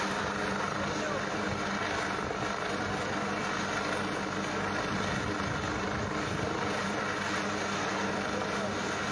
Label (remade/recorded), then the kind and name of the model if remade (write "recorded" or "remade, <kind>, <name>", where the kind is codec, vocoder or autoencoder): recorded